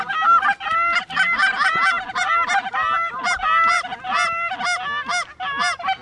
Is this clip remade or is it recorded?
recorded